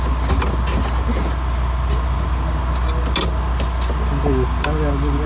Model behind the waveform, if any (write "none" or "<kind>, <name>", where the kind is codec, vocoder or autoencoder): none